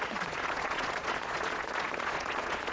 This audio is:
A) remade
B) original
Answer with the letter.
A